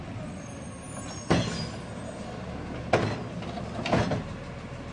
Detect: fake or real real